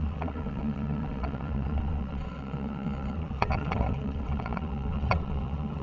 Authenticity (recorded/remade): remade